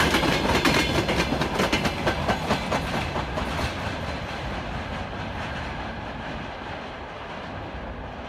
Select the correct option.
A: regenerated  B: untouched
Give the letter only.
B